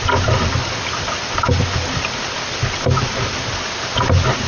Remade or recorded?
recorded